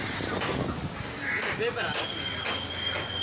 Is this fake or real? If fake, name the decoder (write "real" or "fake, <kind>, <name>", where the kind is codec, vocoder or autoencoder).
real